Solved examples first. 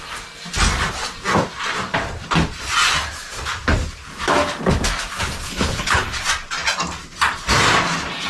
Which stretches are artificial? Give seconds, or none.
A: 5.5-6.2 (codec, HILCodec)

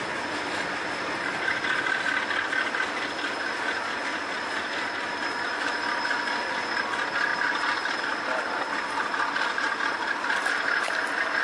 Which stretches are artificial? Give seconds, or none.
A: none

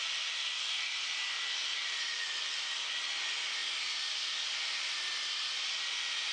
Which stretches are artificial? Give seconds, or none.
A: none

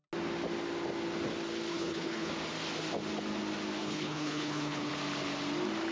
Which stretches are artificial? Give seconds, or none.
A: 1.7-2.3 (codec, HILCodec); 3.8-4.9

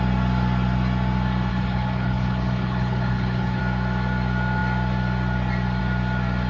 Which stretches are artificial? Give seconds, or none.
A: 1.5-3.6 (codec, HILCodec)

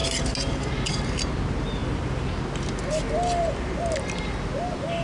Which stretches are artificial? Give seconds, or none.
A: none